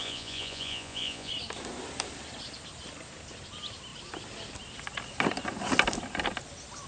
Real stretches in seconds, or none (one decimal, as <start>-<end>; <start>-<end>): 1.3-6.9

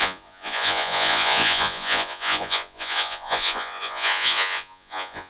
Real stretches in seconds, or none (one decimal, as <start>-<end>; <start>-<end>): none

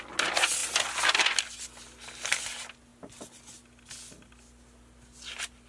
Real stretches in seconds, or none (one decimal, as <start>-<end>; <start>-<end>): 0.0-5.7

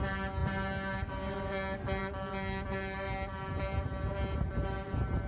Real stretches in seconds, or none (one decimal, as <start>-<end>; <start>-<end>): 0.0-5.3

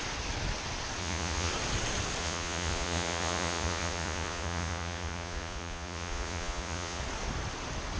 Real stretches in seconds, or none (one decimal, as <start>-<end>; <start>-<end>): 0.0-1.0; 1.5-2.2; 7.0-8.0

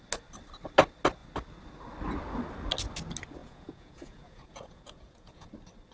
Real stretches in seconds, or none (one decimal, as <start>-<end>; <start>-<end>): 0.0-3.4; 5.5-5.9

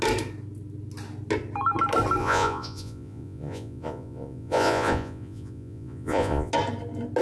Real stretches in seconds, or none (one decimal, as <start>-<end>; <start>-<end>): 0.0-2.2; 6.5-7.2